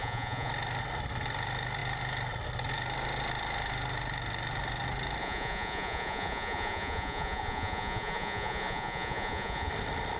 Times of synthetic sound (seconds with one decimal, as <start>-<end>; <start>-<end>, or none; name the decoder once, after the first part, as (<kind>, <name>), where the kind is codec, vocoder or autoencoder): 0.0-0.5 (vocoder, Vocos); 5.2-9.7